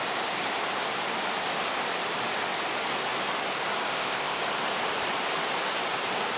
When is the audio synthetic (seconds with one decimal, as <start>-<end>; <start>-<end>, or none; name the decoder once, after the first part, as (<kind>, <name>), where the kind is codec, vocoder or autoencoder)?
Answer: 3.9-4.4 (codec, ZipCodec)